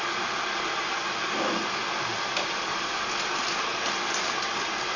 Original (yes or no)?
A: yes